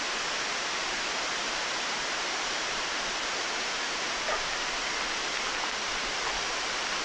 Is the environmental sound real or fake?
fake